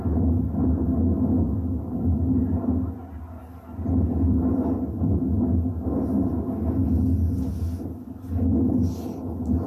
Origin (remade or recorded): recorded